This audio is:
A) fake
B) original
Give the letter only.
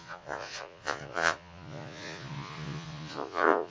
A